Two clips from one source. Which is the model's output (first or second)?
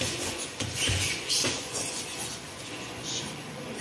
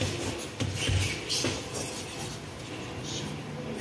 first